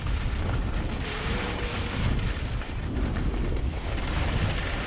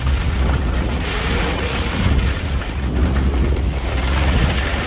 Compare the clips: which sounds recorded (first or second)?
first